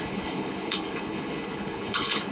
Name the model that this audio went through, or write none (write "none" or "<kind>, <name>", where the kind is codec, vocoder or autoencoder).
codec, HILCodec